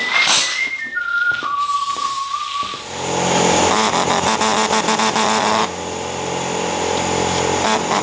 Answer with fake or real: real